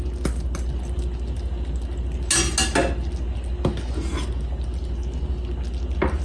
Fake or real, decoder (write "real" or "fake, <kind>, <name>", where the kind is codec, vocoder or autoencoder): real